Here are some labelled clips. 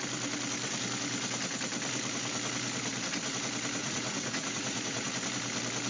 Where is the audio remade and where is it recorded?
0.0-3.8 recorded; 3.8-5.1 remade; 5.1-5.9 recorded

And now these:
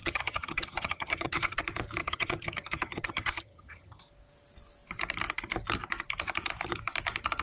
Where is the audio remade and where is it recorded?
0.0-1.6 remade; 1.6-2.0 recorded; 2.0-4.0 remade; 4.0-7.4 recorded

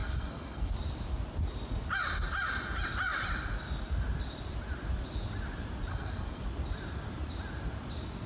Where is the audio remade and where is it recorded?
0.0-0.7 remade; 0.7-5.9 recorded; 5.9-6.4 remade; 6.4-8.3 recorded

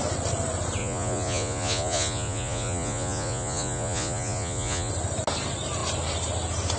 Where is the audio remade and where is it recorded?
0.0-0.8 recorded; 0.8-4.9 remade; 4.9-6.8 recorded

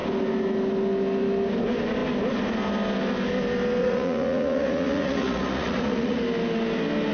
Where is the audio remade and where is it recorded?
0.0-3.8 recorded; 3.8-6.2 remade; 6.2-7.1 recorded

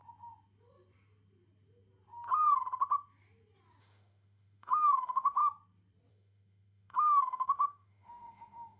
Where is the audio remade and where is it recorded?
0.0-3.8 recorded; 3.8-5.4 remade; 5.4-6.1 recorded; 6.1-8.8 remade

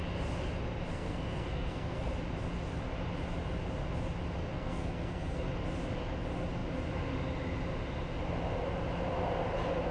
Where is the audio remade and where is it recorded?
0.0-0.9 recorded; 0.9-2.1 remade; 2.1-4.4 recorded; 4.4-5.5 remade; 5.5-9.9 recorded